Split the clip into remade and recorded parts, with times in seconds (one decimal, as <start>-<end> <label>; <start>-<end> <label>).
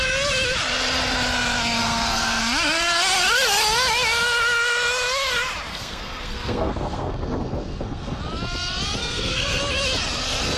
0.0-1.8 recorded; 1.8-2.4 remade; 2.4-5.7 recorded; 5.7-8.2 remade; 8.2-9.0 recorded; 9.0-9.6 remade; 9.6-10.6 recorded